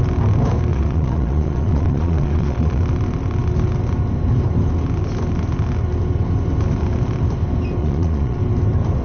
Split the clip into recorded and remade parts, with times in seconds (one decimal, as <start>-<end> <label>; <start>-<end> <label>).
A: 0.0-0.7 recorded; 0.7-2.8 remade; 2.8-7.8 recorded; 7.8-8.4 remade; 8.4-9.0 recorded

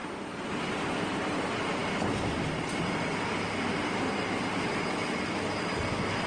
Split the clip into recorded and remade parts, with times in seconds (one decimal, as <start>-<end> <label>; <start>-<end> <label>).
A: 0.0-0.5 remade; 0.5-6.3 recorded